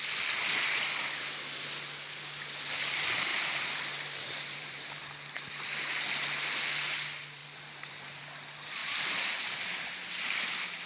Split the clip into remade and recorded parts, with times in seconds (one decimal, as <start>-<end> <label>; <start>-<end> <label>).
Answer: 0.0-3.3 recorded; 3.3-5.0 remade; 5.0-7.4 recorded; 7.4-8.2 remade; 8.2-8.8 recorded; 8.8-9.8 remade; 9.8-10.9 recorded